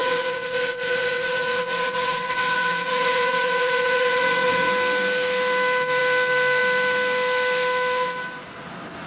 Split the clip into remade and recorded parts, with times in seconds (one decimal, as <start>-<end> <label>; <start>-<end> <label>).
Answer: 0.0-4.7 remade; 4.7-9.1 recorded